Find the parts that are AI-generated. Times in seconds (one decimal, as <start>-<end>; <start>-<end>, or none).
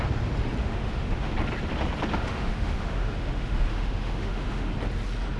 0.6-1.3; 2.1-4.7